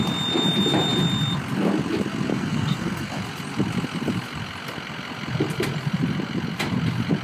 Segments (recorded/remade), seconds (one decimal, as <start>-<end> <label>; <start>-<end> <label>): 0.0-2.3 recorded; 2.3-3.2 remade; 3.2-7.2 recorded